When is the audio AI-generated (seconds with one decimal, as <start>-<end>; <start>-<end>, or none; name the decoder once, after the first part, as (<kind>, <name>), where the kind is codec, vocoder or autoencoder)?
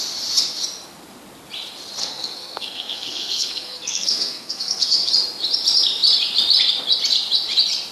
2.0-5.1 (codec, SNAC)